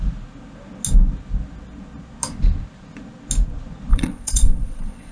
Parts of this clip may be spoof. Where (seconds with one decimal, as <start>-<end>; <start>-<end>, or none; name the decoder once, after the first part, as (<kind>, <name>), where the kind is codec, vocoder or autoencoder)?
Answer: 3.9-5.1 (vocoder, WaveNeXt)